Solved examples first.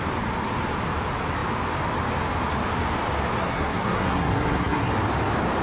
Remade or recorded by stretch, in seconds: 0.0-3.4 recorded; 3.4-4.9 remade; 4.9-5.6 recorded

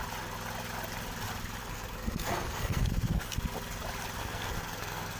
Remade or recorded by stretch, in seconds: 0.0-1.6 recorded; 1.6-3.4 remade; 3.4-4.2 recorded; 4.2-5.2 remade

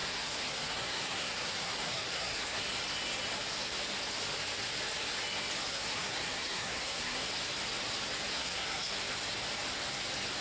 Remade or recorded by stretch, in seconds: 0.0-2.6 remade; 2.6-5.7 recorded; 5.7-7.3 remade; 7.3-8.3 recorded; 8.3-8.9 remade; 8.9-10.4 recorded